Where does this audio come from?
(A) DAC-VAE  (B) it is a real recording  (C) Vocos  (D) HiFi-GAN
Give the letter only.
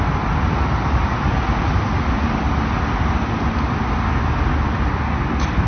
B